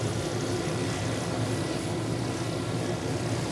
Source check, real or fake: real